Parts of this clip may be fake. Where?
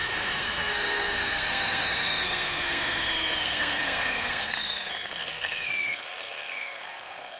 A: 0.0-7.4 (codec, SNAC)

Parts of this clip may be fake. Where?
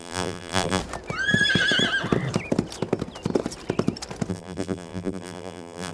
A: 0.0-0.8 (vocoder, BigVGAN v2); 4.3-5.9